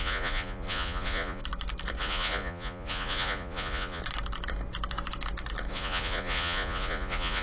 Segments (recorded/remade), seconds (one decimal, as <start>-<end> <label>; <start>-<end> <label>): 0.0-1.4 remade; 1.4-2.0 recorded; 2.0-4.0 remade; 4.0-5.7 recorded; 5.7-7.4 remade